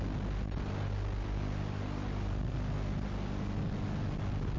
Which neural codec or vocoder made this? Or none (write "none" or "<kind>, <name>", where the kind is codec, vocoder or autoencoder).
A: none